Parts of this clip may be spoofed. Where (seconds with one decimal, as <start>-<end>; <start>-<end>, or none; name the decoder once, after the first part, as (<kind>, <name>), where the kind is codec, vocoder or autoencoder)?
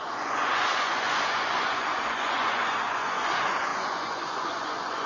0.0-5.1 (vocoder, Vocos)